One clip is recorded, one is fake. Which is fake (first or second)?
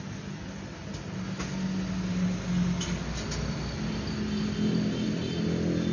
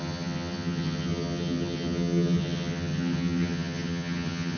second